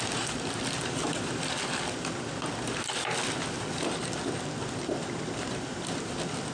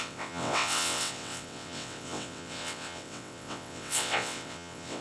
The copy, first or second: second